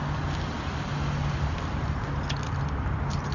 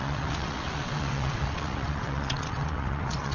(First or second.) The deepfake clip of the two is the second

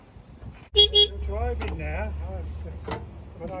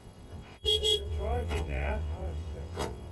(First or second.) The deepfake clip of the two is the second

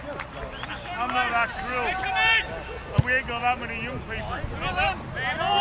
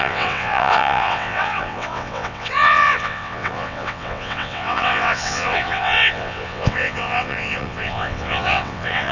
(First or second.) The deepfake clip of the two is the second